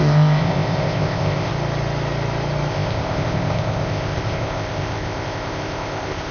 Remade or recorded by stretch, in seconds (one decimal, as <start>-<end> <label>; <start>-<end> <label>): 0.0-1.5 remade; 1.5-2.7 recorded; 2.7-6.3 remade